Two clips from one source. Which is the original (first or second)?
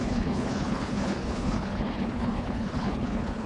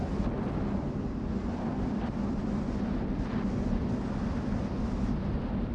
second